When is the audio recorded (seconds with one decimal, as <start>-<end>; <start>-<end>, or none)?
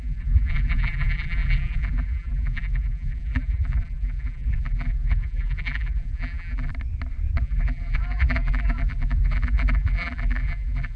6.7-7.4